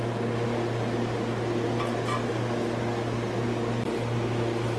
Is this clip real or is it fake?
real